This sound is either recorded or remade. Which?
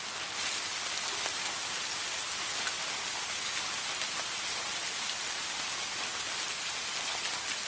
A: recorded